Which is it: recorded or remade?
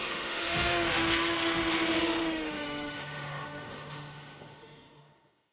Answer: remade